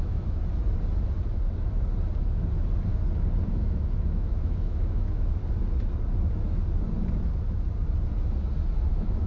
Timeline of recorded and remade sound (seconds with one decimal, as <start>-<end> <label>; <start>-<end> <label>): 0.0-0.4 remade; 0.4-3.5 recorded; 3.5-5.4 remade; 5.4-8.9 recorded; 8.9-9.3 remade